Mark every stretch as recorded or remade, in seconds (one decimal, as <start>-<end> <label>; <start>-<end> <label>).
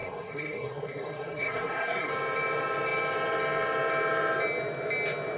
0.0-2.1 remade; 2.1-5.4 recorded